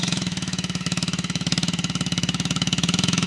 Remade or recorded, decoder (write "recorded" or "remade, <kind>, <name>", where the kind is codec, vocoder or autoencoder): remade, autoencoder, DAC-VAE